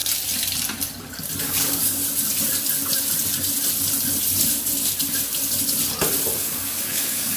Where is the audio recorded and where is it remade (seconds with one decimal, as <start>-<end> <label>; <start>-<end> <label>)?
0.0-1.4 recorded; 1.4-2.0 remade; 2.0-6.4 recorded; 6.4-7.4 remade